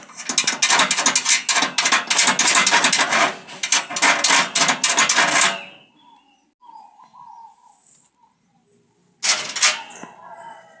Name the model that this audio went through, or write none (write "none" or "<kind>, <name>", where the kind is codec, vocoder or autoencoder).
none